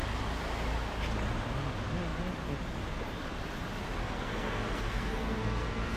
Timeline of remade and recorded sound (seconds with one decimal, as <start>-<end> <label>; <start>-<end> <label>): 0.0-4.0 recorded; 4.0-6.0 remade